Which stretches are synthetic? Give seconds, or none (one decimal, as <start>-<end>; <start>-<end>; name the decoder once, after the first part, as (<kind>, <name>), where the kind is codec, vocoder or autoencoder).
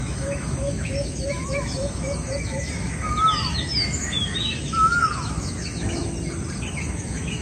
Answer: 0.0-6.0 (autoencoder, DAC-VAE); 6.7-7.4